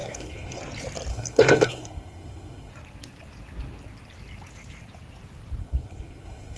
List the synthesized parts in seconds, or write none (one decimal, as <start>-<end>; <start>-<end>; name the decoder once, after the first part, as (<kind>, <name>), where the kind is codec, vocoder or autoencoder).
0.0-0.6 (codec, SNAC); 1.1-2.7; 5.6-6.6